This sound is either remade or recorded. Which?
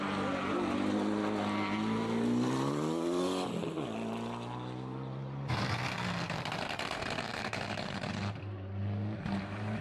recorded